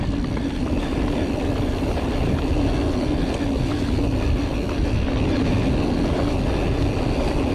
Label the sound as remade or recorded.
recorded